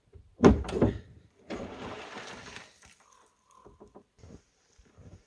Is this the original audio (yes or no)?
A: no